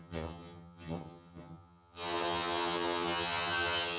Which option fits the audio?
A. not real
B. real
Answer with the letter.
A